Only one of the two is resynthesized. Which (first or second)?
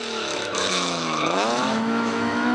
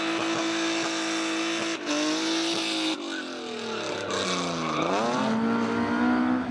first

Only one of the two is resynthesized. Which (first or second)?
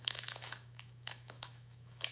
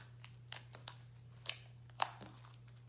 first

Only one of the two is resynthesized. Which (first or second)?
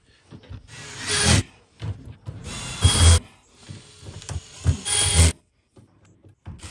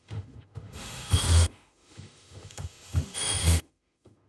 second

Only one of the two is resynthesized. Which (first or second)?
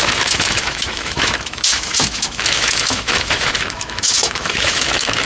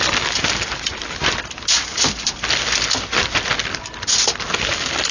first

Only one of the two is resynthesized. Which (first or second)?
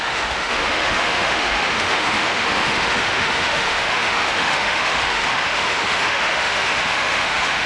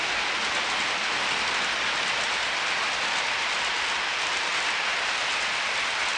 first